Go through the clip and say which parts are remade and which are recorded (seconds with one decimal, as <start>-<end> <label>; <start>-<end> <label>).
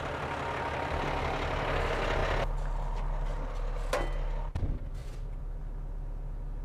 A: 0.0-5.0 recorded; 5.0-5.6 remade; 5.6-6.6 recorded